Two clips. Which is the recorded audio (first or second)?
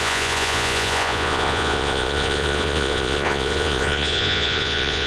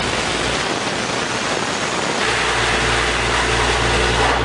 second